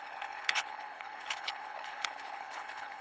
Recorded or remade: remade